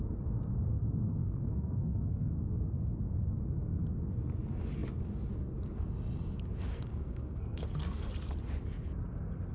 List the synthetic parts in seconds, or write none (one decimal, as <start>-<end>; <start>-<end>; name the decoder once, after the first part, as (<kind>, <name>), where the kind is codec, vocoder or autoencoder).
1.2-2.3 (codec, SNAC); 6.7-8.1